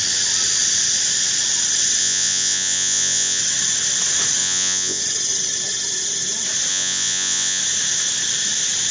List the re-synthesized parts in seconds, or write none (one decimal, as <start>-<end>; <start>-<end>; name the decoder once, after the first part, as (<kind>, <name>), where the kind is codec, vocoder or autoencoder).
2.0-3.4 (vocoder, Vocos); 4.4-5.0; 6.7-7.6